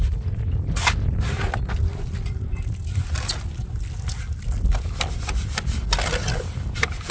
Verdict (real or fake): real